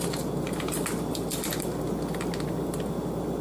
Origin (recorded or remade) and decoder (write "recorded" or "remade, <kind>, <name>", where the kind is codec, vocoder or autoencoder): recorded